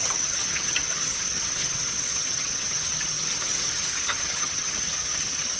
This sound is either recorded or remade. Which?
remade